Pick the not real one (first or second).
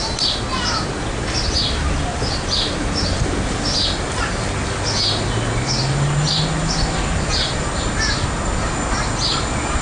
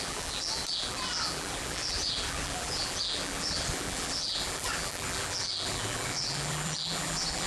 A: second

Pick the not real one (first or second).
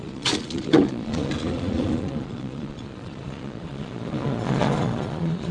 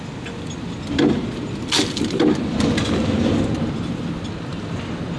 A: first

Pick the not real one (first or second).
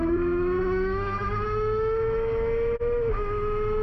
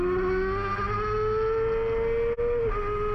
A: first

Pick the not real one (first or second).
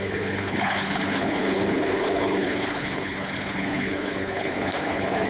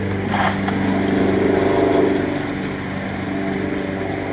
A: first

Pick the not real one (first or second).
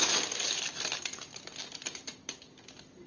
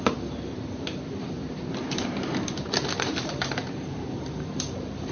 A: second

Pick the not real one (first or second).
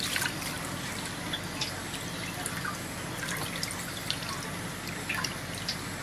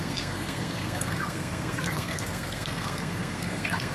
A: second